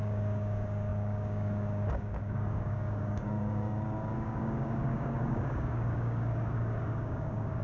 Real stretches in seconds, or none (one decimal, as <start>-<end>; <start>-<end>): none